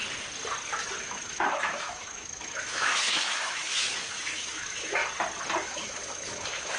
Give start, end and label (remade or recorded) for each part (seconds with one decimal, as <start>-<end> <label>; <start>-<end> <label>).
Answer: 0.0-1.0 recorded; 1.0-5.0 remade; 5.0-5.6 recorded; 5.6-6.8 remade